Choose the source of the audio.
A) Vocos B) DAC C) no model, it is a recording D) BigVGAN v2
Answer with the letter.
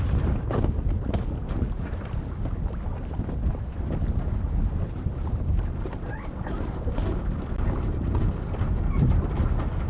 C